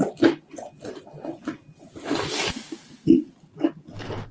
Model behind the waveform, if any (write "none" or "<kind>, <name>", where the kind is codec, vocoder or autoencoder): none